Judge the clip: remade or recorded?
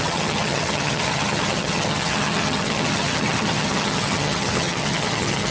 remade